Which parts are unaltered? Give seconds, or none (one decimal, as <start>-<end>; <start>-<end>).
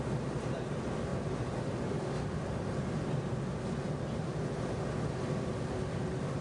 0.0-6.4